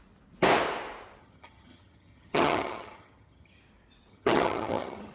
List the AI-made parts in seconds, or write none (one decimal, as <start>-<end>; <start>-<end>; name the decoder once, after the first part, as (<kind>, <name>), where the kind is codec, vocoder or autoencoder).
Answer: 1.2-3.6 (vocoder, HiFi-GAN); 4.1-5.1

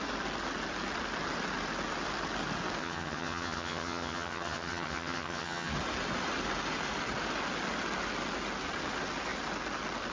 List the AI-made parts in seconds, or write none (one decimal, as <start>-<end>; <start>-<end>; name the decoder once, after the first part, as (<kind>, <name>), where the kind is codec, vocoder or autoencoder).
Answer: 2.8-5.7 (vocoder, HiFi-GAN)